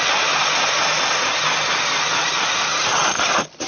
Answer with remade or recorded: recorded